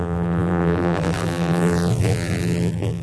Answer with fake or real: fake